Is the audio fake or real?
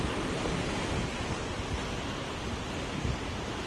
real